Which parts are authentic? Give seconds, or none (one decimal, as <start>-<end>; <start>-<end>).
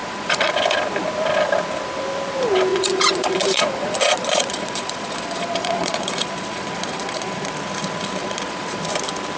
0.5-2.7; 7.5-8.2; 8.8-9.4